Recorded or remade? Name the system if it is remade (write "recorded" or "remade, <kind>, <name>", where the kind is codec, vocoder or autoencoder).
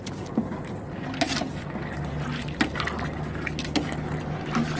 recorded